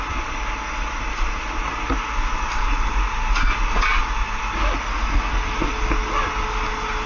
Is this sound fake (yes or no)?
no